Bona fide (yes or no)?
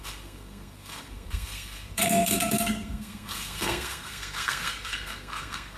no